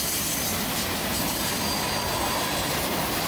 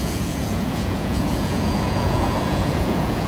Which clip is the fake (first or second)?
second